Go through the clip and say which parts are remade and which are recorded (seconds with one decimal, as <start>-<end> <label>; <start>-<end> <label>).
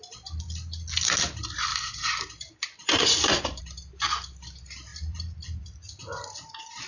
0.0-1.7 recorded; 1.7-3.6 remade; 3.6-6.9 recorded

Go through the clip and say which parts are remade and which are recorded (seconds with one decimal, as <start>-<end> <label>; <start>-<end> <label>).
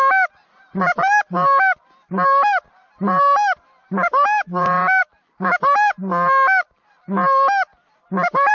0.0-8.5 recorded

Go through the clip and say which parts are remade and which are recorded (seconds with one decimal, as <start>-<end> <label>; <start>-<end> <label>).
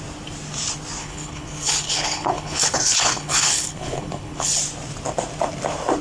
0.0-1.0 recorded; 1.0-4.6 remade; 4.6-6.0 recorded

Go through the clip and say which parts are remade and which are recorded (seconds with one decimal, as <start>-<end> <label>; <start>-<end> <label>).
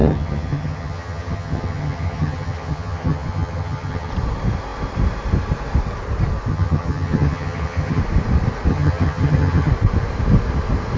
0.0-4.1 remade; 4.1-6.5 recorded; 6.5-8.0 remade; 8.0-8.7 recorded; 8.7-9.7 remade; 9.7-11.0 recorded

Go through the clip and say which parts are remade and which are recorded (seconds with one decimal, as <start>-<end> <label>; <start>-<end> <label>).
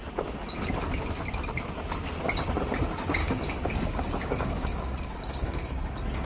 0.0-3.2 recorded; 3.2-5.7 remade; 5.7-6.2 recorded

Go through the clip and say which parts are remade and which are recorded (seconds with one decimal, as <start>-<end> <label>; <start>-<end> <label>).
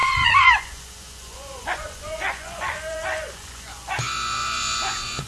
0.0-5.3 remade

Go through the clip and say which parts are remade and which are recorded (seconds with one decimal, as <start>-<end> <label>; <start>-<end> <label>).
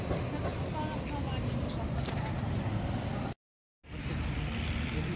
0.0-5.2 recorded